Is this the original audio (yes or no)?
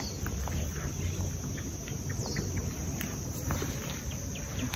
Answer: yes